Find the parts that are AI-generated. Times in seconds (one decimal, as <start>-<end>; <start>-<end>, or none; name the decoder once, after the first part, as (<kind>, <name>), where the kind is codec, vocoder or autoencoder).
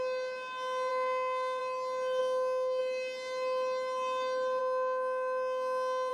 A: 0.9-1.6 (autoencoder, DAC-VAE); 2.2-2.8; 4.6-6.1